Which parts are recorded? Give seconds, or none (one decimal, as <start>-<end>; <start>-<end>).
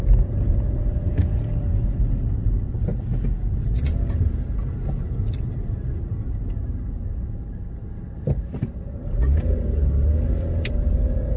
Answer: 0.0-11.4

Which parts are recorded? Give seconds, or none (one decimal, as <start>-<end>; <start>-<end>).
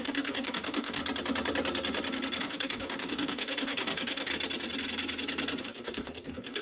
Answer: 1.0-2.4; 4.3-5.6